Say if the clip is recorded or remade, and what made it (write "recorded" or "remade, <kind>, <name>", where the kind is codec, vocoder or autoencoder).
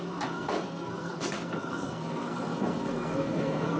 remade, codec, SNAC